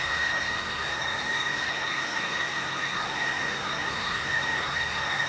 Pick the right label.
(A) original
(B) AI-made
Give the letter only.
B